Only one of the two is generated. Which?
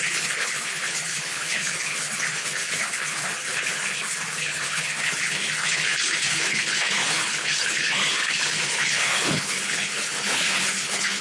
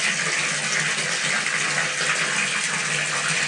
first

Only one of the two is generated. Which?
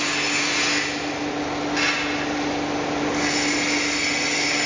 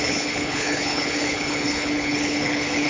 second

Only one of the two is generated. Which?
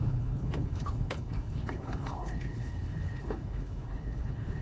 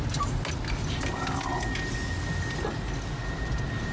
first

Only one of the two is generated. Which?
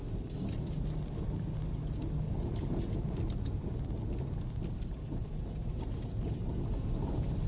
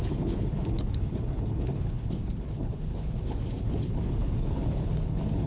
second